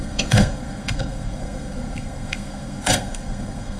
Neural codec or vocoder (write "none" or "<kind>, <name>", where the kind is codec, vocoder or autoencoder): codec, SNAC